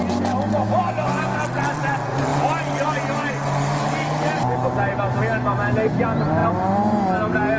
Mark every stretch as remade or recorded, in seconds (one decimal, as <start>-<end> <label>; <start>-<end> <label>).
0.0-7.6 recorded